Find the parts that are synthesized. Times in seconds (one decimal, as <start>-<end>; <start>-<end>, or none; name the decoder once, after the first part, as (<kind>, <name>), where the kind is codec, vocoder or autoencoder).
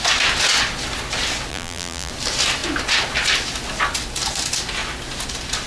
1.5-2.1 (vocoder, BigVGAN v2)